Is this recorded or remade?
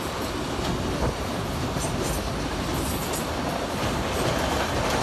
recorded